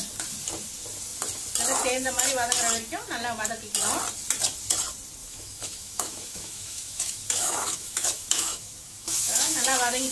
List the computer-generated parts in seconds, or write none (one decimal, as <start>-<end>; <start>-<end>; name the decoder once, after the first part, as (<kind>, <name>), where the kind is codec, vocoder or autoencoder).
5.2-9.6 (autoencoder, DAC-VAE)